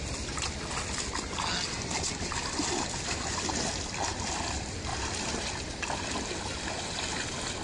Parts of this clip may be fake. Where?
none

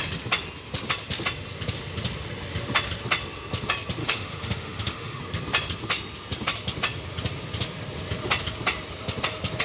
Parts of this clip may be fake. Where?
4.0-5.2 (autoencoder, DAC-VAE)